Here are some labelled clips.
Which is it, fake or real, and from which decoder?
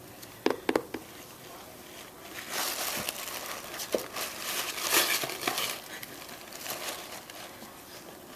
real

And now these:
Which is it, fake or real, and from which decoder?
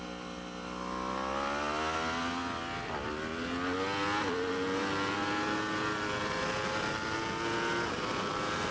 real